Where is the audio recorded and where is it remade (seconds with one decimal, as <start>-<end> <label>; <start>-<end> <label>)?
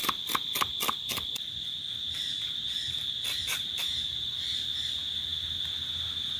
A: 0.0-6.4 recorded